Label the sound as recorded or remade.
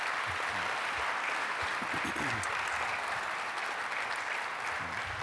recorded